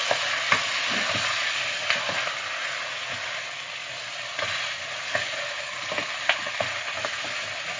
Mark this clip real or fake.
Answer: real